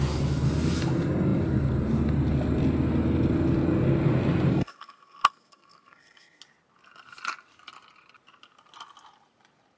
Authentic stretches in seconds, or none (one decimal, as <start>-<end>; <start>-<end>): 0.0-4.5; 6.4-9.8